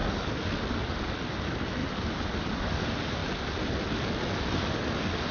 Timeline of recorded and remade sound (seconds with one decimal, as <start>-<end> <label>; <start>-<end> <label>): 0.0-3.2 remade; 3.2-5.3 recorded